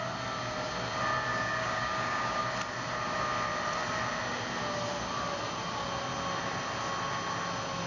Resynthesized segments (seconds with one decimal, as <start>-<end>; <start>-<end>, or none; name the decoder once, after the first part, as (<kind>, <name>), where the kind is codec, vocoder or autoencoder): 1.3-2.4 (codec, DAC)